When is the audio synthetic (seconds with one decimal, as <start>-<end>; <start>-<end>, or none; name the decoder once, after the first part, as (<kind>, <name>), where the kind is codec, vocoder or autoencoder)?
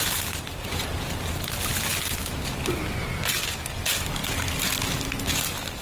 none